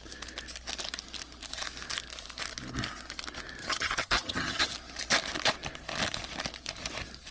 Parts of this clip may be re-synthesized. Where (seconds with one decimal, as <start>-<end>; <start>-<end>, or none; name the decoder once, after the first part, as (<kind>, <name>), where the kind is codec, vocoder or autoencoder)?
3.6-4.7 (vocoder, HiFi-GAN)